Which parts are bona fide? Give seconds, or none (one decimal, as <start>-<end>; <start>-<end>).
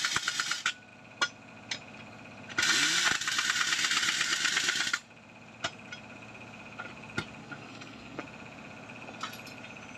0.0-7.4; 8.2-10.0